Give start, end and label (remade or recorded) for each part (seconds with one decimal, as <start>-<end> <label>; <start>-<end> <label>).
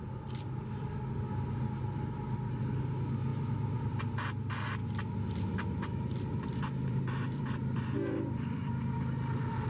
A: 0.0-3.3 recorded; 3.3-4.0 remade; 4.0-4.8 recorded; 4.8-8.7 remade; 8.7-9.7 recorded